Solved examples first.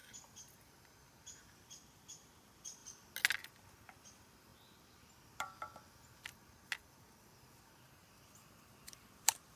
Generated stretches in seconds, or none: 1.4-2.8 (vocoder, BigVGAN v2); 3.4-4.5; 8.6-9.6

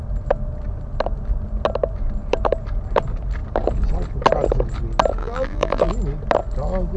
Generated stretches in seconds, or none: 5.2-5.9 (vocoder, BigVGAN v2)

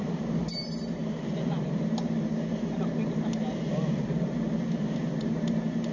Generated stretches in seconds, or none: 0.0-5.9 (vocoder, BigVGAN v2)

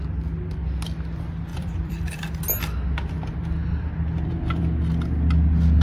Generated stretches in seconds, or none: 1.5-2.4 (vocoder, BigVGAN v2); 3.6-4.6

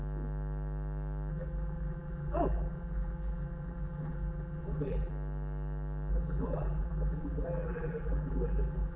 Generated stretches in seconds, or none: 1.3-5.1 (vocoder, BigVGAN v2); 6.1-9.0

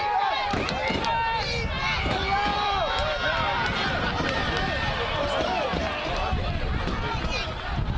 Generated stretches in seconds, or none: 2.5-6.8 (vocoder, BigVGAN v2)